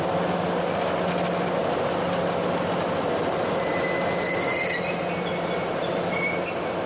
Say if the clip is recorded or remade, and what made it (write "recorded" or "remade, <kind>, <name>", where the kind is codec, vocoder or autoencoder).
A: recorded